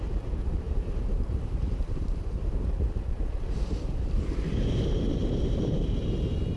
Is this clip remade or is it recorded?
remade